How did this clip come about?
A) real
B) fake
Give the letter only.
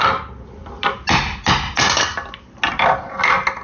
A